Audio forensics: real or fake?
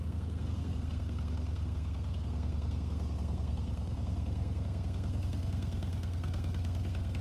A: fake